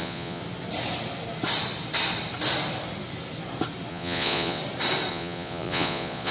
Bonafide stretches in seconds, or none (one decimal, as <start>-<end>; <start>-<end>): 0.4-3.9; 4.6-5.1